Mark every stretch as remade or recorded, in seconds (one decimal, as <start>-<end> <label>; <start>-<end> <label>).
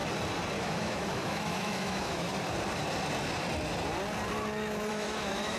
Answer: 0.0-0.6 recorded; 0.6-2.3 remade; 2.3-4.9 recorded; 4.9-5.6 remade